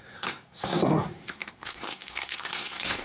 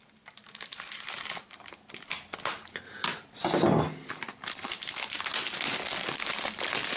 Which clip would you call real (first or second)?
second